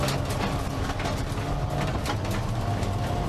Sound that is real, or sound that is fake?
real